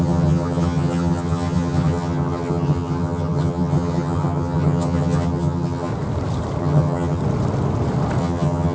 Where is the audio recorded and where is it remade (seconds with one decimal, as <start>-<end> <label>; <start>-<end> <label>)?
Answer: 0.0-5.9 remade; 5.9-6.6 recorded; 6.6-7.2 remade; 7.2-8.2 recorded; 8.2-8.7 remade